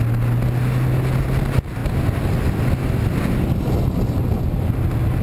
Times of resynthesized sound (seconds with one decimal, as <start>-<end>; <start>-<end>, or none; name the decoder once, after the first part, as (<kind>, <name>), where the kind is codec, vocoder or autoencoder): none